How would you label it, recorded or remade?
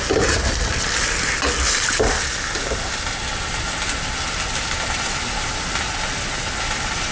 recorded